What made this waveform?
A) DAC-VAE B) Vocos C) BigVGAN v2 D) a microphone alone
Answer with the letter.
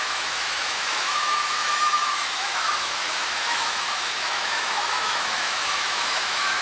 A